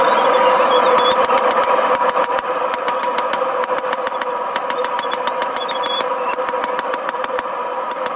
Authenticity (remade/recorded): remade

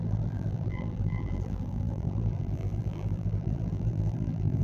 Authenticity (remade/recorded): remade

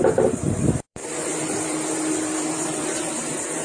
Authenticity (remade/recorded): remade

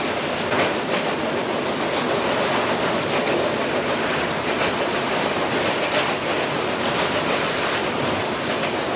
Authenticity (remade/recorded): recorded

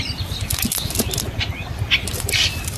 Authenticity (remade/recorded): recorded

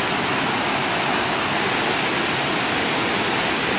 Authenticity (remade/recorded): recorded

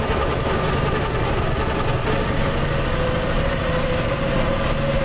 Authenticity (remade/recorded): recorded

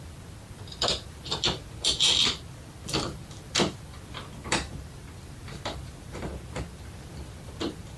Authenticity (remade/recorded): remade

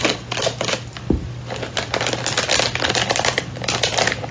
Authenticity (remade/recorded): recorded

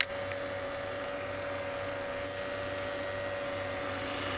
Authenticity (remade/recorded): recorded